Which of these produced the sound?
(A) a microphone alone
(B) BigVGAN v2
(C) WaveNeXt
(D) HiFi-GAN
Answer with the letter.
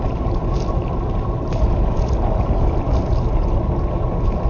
A